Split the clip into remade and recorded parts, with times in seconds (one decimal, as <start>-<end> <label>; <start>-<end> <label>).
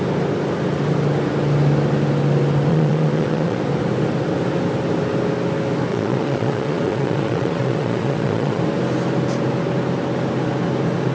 0.0-2.7 recorded; 2.7-3.6 remade; 3.6-5.9 recorded; 5.9-8.6 remade; 8.6-11.1 recorded